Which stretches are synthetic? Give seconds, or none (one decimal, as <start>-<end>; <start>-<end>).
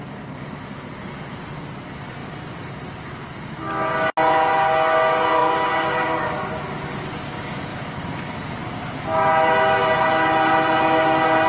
0.7-1.2; 2.2-3.2; 5.4-6.5; 7.7-8.3